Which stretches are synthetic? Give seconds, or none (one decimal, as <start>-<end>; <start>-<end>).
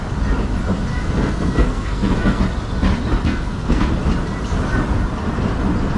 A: 0.9-2.4; 3.2-3.9